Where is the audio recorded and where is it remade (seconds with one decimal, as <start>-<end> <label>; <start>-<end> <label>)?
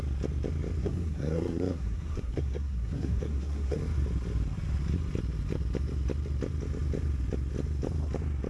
0.0-0.8 recorded; 0.8-3.8 remade; 3.8-8.5 recorded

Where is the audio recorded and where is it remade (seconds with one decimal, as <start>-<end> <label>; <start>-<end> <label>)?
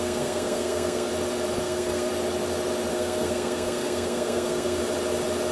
0.0-1.1 remade; 1.1-1.6 recorded; 1.6-2.1 remade; 2.1-2.9 recorded; 2.9-4.8 remade; 4.8-5.5 recorded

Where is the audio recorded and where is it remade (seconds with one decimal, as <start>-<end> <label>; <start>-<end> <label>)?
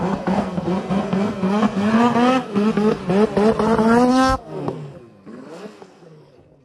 0.0-3.0 remade; 3.0-4.1 recorded; 4.1-6.6 remade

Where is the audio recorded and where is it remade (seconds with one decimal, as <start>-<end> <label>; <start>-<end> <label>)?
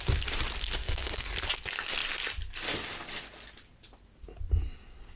0.0-0.8 recorded; 0.8-1.3 remade; 1.3-5.2 recorded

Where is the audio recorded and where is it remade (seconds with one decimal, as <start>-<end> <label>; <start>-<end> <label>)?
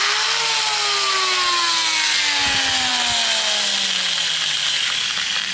0.0-5.5 recorded